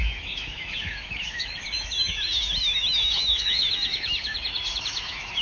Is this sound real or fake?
fake